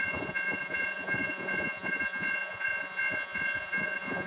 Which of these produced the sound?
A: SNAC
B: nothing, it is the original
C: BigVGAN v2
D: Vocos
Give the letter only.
D